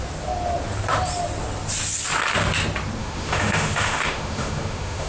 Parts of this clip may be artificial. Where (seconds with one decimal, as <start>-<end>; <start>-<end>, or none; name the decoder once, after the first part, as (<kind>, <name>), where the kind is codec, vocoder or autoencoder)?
3.0-5.1 (autoencoder, DAC-VAE)